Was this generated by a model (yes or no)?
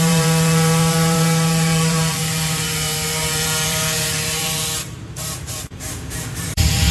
yes